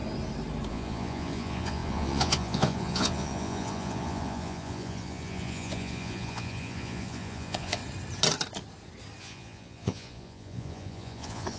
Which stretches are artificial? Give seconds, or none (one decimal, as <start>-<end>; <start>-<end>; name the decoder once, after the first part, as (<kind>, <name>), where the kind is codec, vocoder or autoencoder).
0.7-7.8 (vocoder, Vocos); 9.2-11.6

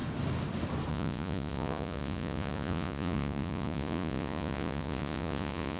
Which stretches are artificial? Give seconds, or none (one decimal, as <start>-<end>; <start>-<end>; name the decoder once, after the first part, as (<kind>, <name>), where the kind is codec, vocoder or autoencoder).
0.9-5.8 (vocoder, Vocos)

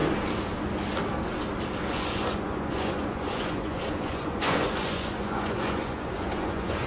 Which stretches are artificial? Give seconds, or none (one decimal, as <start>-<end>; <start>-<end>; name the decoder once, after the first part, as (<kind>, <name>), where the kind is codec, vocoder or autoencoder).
1.9-6.9 (vocoder, Vocos)